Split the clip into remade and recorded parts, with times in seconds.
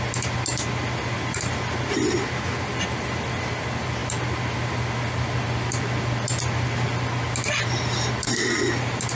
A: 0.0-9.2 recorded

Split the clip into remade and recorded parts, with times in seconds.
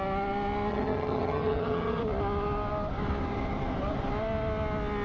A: 0.0-0.7 recorded; 0.7-2.0 remade; 2.0-5.0 recorded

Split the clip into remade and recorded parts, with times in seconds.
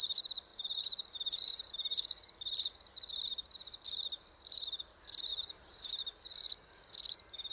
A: 0.0-0.5 recorded; 0.5-2.3 remade; 2.3-5.3 recorded; 5.3-5.9 remade; 5.9-7.5 recorded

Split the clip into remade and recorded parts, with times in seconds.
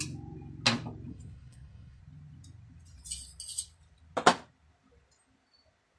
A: 0.0-1.1 recorded; 1.1-2.0 remade; 2.0-6.0 recorded